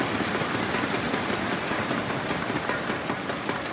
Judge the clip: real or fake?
fake